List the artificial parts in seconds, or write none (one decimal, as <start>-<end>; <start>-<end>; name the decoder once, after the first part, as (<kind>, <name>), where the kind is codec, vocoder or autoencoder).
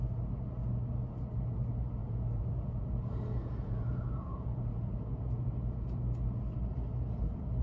2.0-6.0 (vocoder, Vocos)